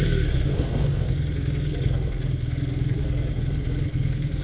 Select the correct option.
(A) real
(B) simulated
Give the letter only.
B